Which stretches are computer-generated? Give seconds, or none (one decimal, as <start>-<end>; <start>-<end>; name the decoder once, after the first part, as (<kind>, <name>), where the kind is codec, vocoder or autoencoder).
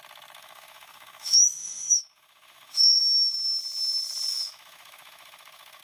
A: 0.4-3.0 (autoencoder, DAC-VAE); 4.3-5.8